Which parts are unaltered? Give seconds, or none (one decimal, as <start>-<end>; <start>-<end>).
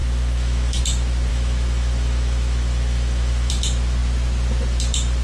0.8-1.3; 3.5-5.2